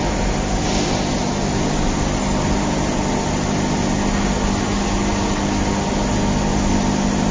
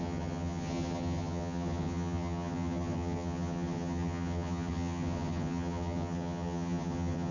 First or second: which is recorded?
first